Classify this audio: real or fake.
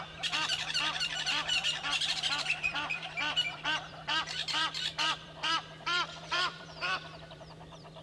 fake